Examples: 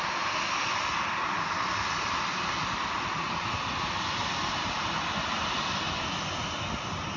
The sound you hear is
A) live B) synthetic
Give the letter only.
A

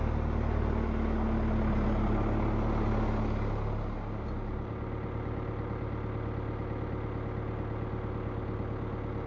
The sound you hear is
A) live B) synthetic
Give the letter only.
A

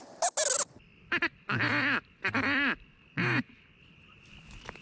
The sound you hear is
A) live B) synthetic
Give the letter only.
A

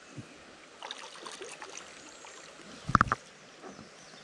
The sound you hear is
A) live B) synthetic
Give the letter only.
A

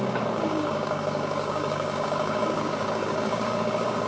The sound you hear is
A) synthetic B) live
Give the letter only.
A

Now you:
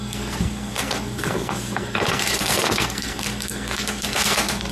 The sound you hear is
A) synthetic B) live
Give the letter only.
A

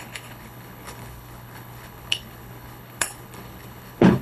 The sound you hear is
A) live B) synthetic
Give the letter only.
B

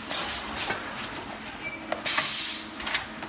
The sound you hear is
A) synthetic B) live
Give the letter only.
B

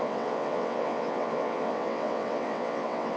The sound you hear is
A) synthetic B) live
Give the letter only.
A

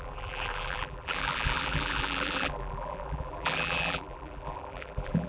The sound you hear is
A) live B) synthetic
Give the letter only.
B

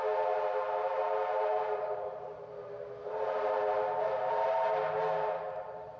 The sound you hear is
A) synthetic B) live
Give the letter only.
B